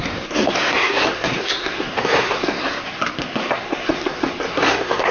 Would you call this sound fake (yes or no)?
yes